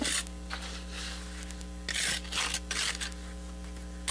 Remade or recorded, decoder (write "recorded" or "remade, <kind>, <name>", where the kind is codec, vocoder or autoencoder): recorded